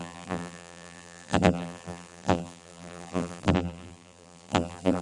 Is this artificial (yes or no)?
yes